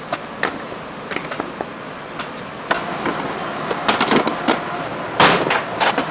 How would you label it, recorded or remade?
recorded